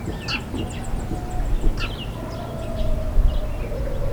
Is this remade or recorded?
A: recorded